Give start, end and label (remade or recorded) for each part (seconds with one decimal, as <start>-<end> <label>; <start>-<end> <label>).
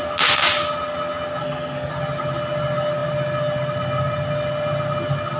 0.0-1.4 recorded; 1.4-1.9 remade; 1.9-5.4 recorded